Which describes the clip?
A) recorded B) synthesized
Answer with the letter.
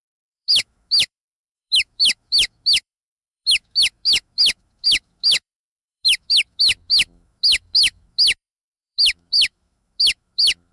B